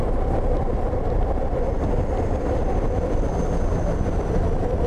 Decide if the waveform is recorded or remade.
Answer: remade